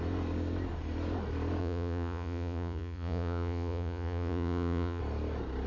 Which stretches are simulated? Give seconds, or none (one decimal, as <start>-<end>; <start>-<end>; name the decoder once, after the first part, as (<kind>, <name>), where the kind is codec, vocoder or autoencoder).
1.6-5.0 (vocoder, Vocos)